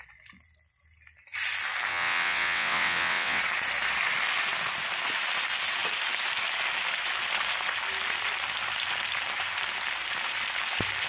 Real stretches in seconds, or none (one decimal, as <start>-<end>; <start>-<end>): 0.0-1.9; 3.4-11.1